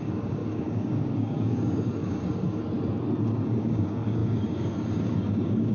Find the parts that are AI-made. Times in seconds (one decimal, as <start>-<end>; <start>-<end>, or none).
0.0-2.6; 3.2-5.7